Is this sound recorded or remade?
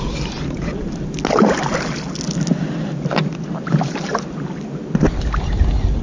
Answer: recorded